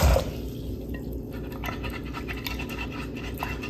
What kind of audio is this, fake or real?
real